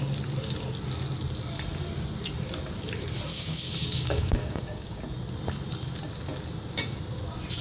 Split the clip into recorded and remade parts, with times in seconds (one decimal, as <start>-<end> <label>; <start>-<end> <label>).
0.0-3.3 recorded; 3.3-5.0 remade; 5.0-7.6 recorded